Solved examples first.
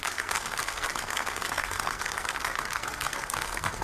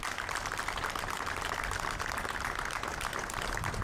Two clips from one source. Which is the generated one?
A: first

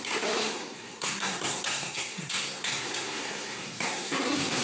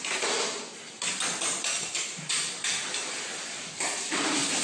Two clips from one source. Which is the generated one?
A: first